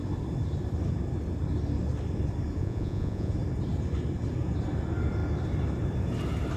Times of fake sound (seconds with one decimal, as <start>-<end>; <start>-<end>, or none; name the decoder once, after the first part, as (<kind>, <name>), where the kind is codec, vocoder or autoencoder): 2.6-3.3 (vocoder, Vocos)